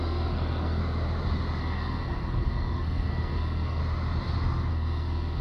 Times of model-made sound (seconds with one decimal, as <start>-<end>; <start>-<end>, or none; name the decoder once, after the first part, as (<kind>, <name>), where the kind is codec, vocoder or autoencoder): 0.0-0.8 (codec, SNAC); 1.6-3.8; 4.7-5.4